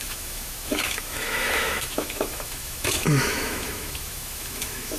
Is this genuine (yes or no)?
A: no